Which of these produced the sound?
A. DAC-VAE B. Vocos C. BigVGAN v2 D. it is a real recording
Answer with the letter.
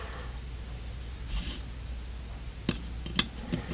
D